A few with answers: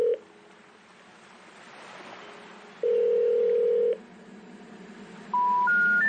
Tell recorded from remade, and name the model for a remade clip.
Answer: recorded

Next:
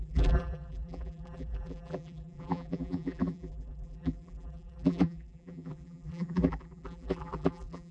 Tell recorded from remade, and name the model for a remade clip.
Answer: remade, vocoder, BigVGAN v2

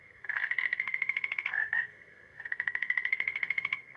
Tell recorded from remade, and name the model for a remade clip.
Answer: remade, codec, SNAC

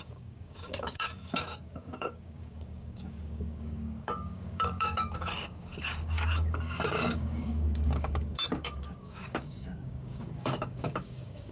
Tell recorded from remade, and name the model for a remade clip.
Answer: remade, codec, DAC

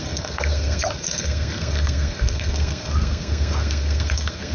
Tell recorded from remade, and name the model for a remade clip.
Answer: remade, codec, SNAC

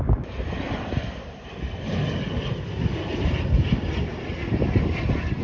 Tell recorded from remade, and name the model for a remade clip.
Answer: recorded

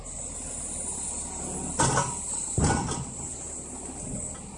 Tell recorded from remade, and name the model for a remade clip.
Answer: recorded